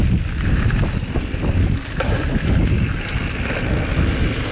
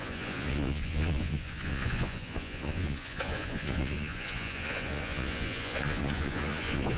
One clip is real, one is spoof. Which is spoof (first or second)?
second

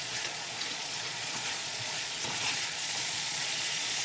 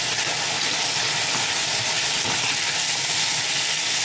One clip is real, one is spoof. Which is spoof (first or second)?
first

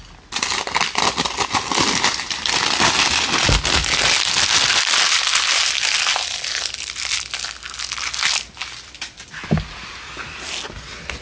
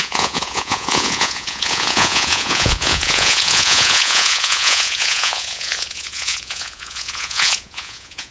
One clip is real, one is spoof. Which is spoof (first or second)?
second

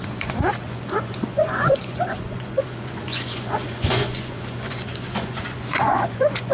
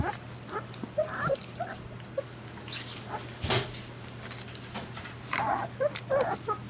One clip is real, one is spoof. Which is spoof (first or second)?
first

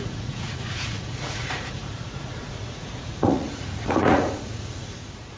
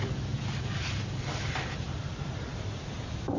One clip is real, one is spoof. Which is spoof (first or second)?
first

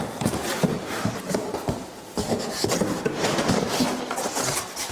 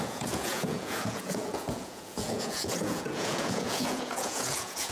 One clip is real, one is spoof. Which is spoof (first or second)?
second